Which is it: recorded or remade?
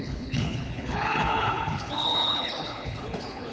remade